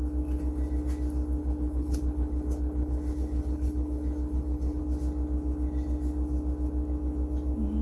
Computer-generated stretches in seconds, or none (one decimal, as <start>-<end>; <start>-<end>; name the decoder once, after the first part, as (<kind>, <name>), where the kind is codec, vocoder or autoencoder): 1.4-4.8 (codec, HILCodec)